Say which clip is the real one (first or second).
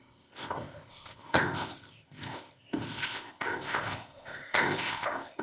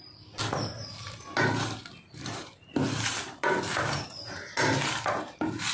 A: second